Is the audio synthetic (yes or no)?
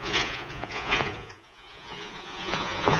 yes